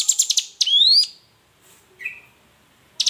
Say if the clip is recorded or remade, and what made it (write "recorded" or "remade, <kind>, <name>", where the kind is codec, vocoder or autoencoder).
recorded